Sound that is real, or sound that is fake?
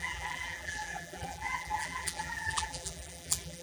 fake